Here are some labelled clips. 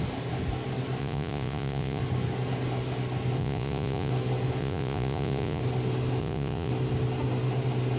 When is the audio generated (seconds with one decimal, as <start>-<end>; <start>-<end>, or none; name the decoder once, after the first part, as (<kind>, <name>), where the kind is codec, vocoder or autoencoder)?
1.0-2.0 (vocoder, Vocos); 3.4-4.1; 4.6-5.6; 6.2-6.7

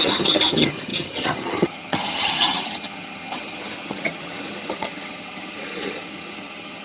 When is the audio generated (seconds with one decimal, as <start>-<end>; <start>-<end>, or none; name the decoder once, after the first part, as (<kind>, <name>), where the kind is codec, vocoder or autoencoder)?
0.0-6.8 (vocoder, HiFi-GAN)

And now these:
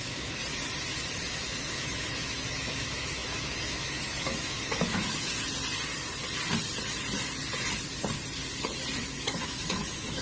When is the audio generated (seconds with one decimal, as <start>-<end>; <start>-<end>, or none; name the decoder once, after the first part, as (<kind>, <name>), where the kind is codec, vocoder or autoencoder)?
0.0-0.4 (autoencoder, DAC-VAE); 1.3-5.3; 9.0-10.2

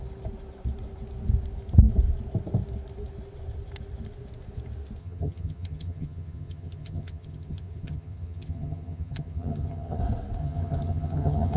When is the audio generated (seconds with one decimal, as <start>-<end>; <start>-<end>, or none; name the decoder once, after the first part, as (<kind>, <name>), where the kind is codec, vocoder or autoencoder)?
5.0-10.0 (vocoder, HiFi-GAN); 10.4-11.6

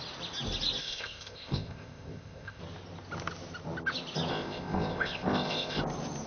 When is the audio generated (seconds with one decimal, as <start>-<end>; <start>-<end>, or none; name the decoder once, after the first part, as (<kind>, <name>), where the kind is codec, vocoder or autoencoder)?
0.8-2.6 (codec, ZipCodec); 4.3-5.8

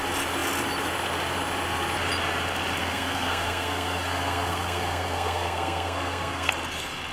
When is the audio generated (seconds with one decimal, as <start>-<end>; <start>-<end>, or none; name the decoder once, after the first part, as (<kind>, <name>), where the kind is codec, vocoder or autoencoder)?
2.8-6.5 (codec, SNAC)